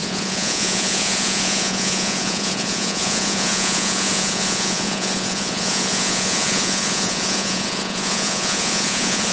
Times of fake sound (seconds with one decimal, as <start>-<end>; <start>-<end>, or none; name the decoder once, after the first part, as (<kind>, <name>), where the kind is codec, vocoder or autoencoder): 0.0-9.3 (vocoder, Vocos)